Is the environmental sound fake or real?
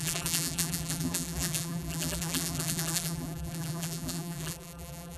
fake